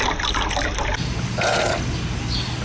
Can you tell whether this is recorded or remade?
recorded